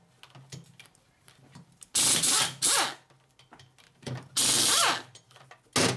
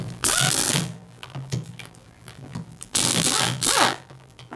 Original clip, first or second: first